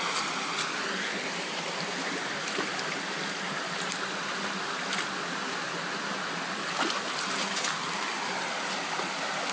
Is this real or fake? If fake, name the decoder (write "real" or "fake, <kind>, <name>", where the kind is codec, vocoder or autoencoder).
real